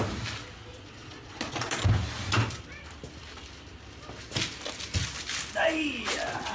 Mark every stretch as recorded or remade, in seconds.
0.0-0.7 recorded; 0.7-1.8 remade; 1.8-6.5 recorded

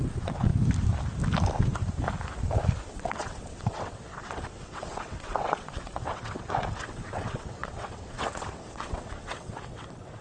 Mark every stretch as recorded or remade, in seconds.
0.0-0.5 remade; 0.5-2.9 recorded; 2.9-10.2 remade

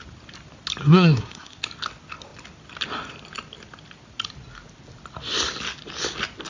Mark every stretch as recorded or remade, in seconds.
0.0-0.8 recorded; 0.8-1.6 remade; 1.6-6.5 recorded

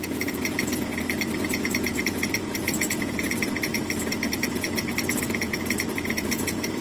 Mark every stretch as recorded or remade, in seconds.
0.0-0.9 remade; 0.9-1.4 recorded; 1.4-6.8 remade

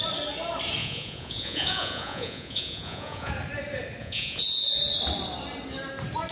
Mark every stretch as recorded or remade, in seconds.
0.0-0.8 recorded; 0.8-3.3 remade; 3.3-4.0 recorded; 4.0-4.8 remade; 4.8-6.3 recorded